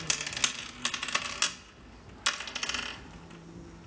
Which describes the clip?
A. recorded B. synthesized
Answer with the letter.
A